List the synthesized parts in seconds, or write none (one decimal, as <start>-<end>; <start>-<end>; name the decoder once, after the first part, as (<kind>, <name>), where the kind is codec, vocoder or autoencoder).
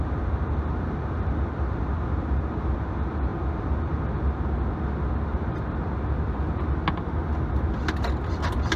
none